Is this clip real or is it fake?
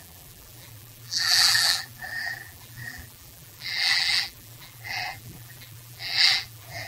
fake